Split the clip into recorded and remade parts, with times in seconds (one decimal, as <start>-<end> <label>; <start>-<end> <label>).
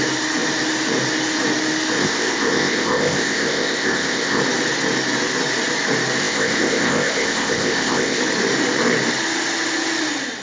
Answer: 0.0-2.0 recorded; 2.0-4.4 remade; 4.4-6.2 recorded; 6.2-8.2 remade; 8.2-10.4 recorded